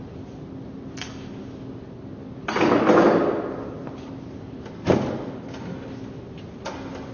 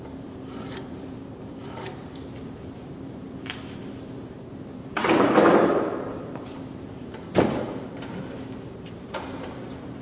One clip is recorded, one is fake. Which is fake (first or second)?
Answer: second